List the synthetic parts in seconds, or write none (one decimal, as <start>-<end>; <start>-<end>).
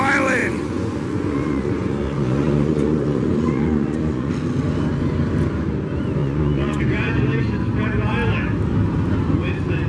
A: 0.4-4.3; 6.2-6.8